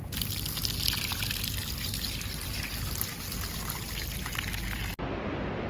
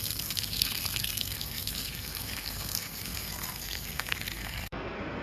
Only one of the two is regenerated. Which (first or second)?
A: second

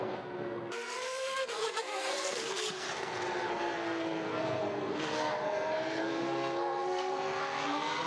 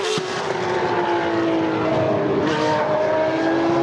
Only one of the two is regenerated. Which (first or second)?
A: first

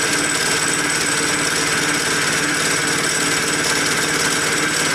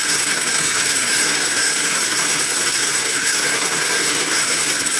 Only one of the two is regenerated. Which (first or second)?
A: second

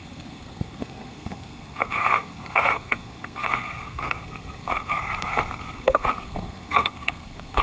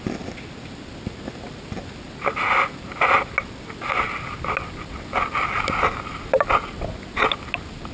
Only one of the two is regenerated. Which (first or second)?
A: first